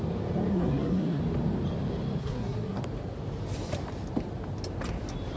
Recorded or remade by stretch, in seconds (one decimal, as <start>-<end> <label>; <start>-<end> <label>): 0.0-0.5 recorded; 0.5-1.2 remade; 1.2-2.2 recorded; 2.2-2.8 remade; 2.8-5.4 recorded